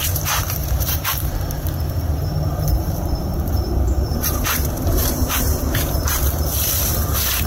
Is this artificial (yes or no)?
yes